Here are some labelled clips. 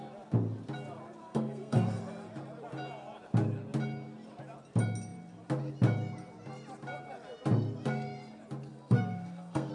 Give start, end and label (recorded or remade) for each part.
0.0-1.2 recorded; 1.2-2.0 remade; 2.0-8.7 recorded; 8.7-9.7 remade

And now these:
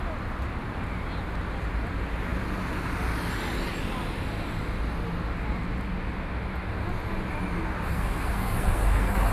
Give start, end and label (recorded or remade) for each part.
0.0-7.9 recorded; 7.9-9.3 remade

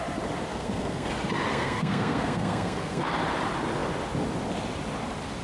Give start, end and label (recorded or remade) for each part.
0.0-0.5 recorded; 0.5-1.1 remade; 1.1-1.5 recorded; 1.5-3.1 remade; 3.1-5.4 recorded

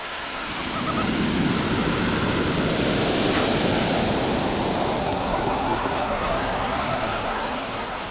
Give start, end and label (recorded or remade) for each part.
0.0-0.5 remade; 0.5-5.0 recorded; 5.0-8.1 remade